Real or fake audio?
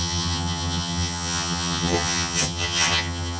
fake